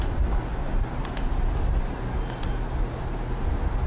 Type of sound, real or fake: real